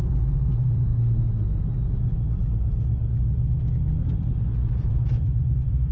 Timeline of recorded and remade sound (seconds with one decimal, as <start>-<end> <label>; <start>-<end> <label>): 0.0-0.9 remade; 0.9-4.4 recorded; 4.4-5.9 remade